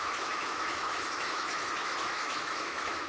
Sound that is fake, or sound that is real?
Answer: fake